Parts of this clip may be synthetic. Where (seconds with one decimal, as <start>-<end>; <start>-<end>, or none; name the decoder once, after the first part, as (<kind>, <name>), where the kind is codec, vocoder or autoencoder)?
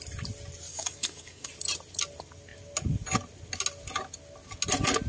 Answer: 0.7-1.5 (codec, DAC)